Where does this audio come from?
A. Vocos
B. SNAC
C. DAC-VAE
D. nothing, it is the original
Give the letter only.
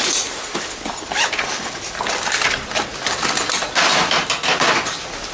D